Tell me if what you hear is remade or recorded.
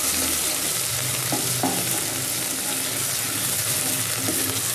recorded